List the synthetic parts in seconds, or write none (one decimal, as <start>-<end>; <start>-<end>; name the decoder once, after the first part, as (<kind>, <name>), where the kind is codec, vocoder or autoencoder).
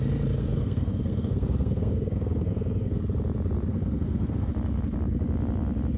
0.4-3.0 (codec, SNAC); 3.7-4.5